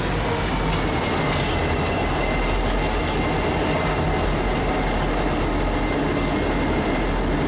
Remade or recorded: recorded